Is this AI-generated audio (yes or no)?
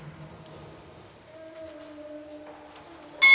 no